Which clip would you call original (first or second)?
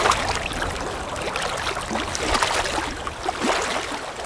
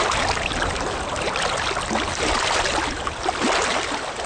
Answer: first